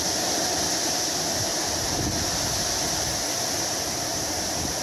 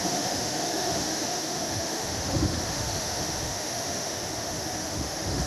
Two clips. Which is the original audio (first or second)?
first